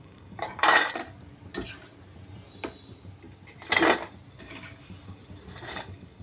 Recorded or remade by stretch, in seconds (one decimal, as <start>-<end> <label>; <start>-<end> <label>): 0.0-1.0 remade; 1.0-4.4 recorded; 4.4-5.2 remade; 5.2-5.7 recorded; 5.7-6.2 remade